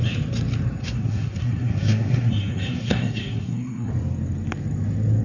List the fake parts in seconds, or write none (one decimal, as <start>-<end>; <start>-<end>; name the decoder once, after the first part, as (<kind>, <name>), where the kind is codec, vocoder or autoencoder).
0.8-3.9 (codec, SNAC)

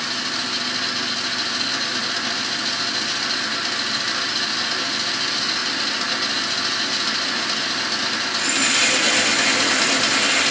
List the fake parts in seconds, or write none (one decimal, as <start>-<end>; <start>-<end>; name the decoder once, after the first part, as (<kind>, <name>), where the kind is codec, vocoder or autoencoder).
none

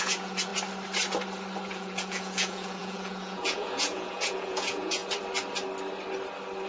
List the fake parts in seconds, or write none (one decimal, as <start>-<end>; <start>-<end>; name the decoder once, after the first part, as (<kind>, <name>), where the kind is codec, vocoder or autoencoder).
0.0-0.5 (vocoder, Vocos); 1.7-5.0

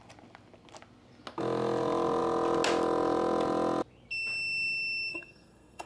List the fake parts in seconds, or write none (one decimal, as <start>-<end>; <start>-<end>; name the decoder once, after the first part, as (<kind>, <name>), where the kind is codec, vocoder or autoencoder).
5.1-5.9 (codec, SNAC)

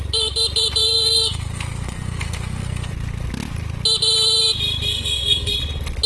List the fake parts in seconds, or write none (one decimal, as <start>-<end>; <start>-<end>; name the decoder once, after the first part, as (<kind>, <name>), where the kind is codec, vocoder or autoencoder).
0.8-2.9 (codec, SNAC); 4.9-5.5

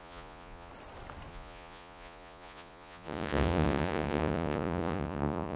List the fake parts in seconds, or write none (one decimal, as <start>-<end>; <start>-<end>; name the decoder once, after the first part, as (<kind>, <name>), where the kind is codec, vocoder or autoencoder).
0.0-0.7 (vocoder, Vocos); 1.3-5.6